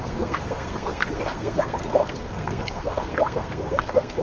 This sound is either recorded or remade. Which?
remade